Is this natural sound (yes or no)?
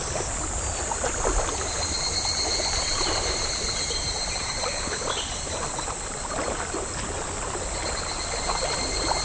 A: yes